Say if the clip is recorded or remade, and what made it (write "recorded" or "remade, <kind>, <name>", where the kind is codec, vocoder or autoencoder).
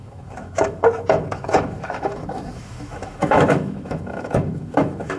remade, autoencoder, DAC-VAE